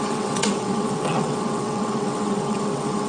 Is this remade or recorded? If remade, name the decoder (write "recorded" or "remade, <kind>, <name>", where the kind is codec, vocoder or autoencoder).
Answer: remade, vocoder, WaveNeXt